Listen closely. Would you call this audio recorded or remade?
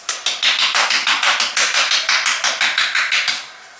recorded